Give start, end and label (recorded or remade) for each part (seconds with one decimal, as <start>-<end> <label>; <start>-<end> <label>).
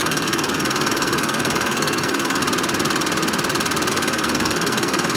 0.0-2.4 remade; 2.4-3.9 recorded; 3.9-5.2 remade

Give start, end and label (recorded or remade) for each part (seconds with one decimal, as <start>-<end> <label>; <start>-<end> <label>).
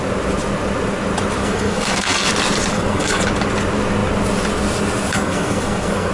0.0-1.4 recorded; 1.4-2.3 remade; 2.3-2.7 recorded; 2.7-3.2 remade; 3.2-5.1 recorded; 5.1-6.1 remade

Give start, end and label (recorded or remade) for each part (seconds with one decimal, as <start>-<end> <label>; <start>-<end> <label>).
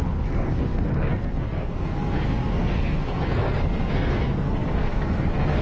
0.0-5.6 remade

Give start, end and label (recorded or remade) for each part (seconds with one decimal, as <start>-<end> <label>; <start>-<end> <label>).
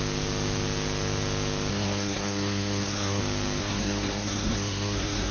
0.0-1.7 recorded; 1.7-3.2 remade; 3.2-3.6 recorded; 3.6-5.3 remade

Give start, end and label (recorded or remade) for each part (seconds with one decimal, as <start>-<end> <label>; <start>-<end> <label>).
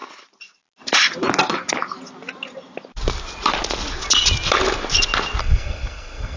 0.0-5.4 recorded; 5.4-6.4 remade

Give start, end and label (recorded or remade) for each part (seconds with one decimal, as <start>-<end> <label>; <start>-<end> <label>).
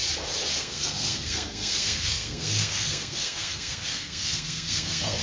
0.0-0.6 recorded; 0.6-5.2 remade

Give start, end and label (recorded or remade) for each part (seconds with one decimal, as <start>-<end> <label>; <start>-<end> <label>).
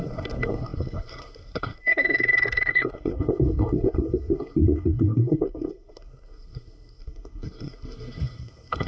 0.0-8.9 remade